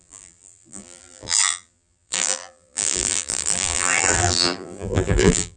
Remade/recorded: remade